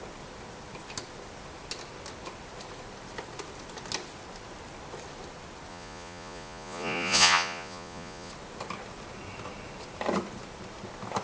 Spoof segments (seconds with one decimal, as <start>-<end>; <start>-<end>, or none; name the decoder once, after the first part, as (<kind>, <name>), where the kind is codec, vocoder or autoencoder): 5.7-8.3 (vocoder, Vocos)